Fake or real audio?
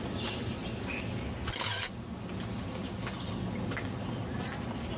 real